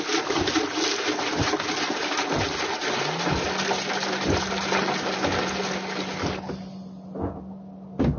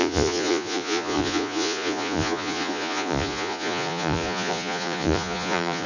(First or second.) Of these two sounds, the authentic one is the first